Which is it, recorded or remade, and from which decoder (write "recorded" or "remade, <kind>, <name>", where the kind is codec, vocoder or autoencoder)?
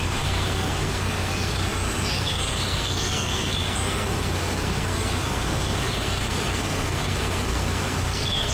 remade, codec, SNAC